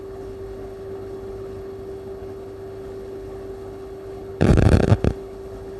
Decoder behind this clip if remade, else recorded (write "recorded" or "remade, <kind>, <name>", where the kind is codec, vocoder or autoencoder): remade, codec, HILCodec